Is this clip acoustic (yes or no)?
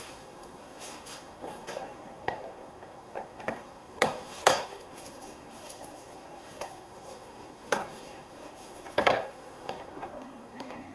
no